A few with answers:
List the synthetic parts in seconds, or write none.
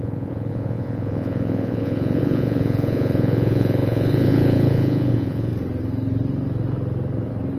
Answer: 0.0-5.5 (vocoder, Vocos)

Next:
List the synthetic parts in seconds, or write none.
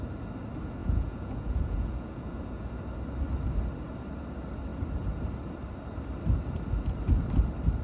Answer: 0.8-2.7 (vocoder, Vocos)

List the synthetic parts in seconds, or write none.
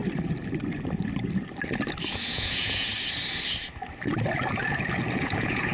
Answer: 2.1-2.9 (vocoder, Vocos); 5.2-5.7